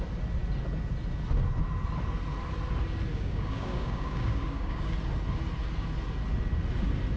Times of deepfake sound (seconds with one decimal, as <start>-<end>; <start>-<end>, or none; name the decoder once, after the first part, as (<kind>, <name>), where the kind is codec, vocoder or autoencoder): 3.1-4.9 (codec, DAC)

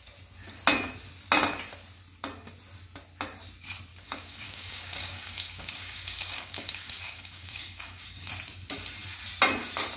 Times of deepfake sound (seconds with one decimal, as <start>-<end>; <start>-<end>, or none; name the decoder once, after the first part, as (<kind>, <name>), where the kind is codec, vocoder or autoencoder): 3.9-8.3 (codec, DAC)

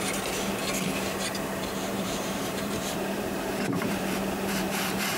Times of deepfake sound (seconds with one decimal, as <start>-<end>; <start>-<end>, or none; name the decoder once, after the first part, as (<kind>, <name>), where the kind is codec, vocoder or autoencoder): 1.9-5.2 (vocoder, BigVGAN v2)

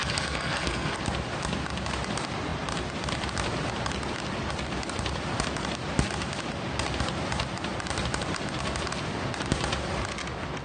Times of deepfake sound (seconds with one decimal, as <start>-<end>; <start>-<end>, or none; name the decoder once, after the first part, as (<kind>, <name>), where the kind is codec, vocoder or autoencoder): 0.0-1.0 (codec, SNAC)